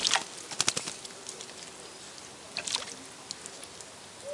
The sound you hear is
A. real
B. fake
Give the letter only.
A